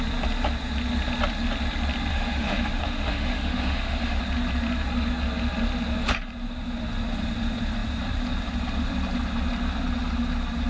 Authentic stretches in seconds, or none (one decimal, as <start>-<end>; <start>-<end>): 0.0-2.1; 4.2-10.7